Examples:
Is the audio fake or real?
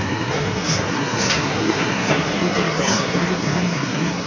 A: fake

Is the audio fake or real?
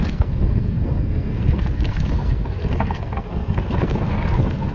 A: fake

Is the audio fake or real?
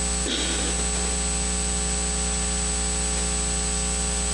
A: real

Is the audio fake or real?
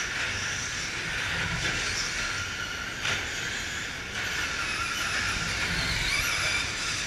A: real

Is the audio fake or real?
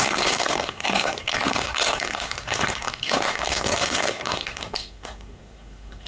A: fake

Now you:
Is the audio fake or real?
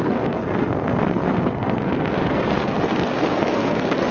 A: fake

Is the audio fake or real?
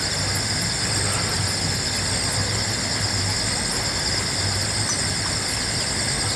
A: real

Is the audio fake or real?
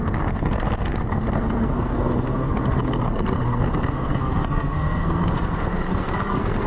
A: fake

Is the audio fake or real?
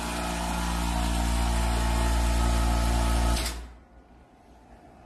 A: real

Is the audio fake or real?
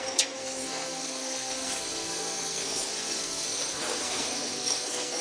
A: fake